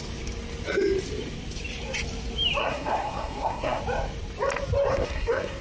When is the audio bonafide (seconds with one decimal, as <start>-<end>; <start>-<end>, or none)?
0.0-2.6; 3.8-4.9